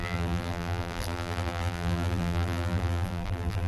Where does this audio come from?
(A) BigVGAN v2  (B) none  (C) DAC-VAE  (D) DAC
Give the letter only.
A